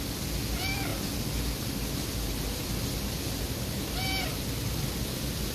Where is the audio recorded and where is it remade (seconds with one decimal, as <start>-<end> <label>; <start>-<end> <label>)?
0.0-5.5 recorded